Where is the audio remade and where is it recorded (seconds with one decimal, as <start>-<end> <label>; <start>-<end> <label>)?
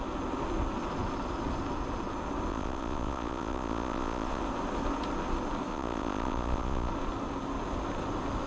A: 0.0-2.5 recorded; 2.5-4.4 remade; 4.4-5.7 recorded; 5.7-6.9 remade; 6.9-8.5 recorded